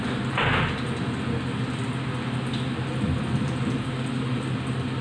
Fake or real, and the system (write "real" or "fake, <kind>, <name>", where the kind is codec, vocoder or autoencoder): real